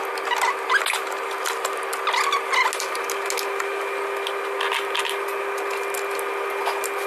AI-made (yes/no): no